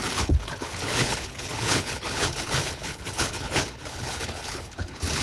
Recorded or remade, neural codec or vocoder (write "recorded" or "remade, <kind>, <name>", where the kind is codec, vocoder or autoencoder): remade, codec, HILCodec